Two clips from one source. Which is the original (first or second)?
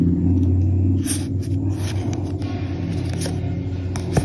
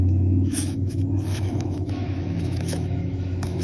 first